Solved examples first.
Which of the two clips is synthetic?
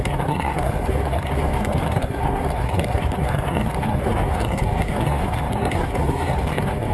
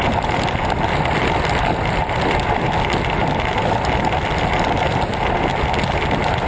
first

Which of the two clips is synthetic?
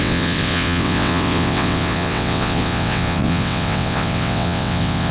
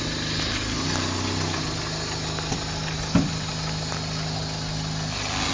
first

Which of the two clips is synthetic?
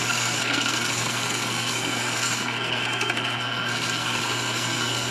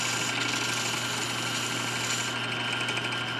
first